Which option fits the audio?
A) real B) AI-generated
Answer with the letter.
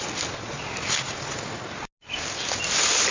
A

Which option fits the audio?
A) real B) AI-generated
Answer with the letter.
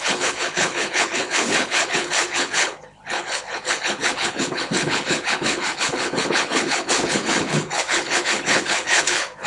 B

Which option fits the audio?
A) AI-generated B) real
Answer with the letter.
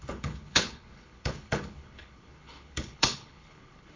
A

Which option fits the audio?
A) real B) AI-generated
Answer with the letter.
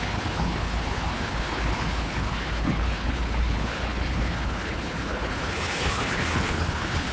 B